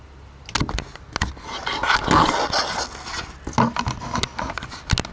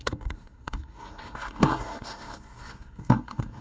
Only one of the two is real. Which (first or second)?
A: first